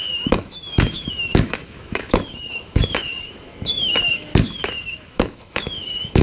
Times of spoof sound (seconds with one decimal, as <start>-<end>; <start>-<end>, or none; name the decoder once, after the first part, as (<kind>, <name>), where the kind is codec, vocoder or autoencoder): 0.0-6.2 (autoencoder, DAC-VAE)